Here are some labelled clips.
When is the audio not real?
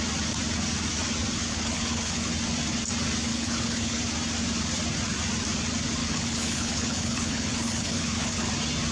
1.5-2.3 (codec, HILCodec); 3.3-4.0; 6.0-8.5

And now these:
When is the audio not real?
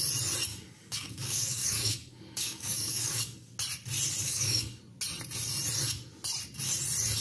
0.5-3.5 (codec, DAC); 4.2-4.8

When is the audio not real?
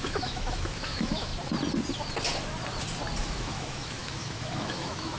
0.0-1.3 (autoencoder, DAC-VAE); 3.2-5.2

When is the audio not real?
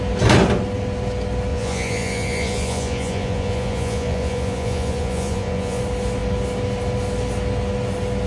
1.5-5.8 (vocoder, Vocos)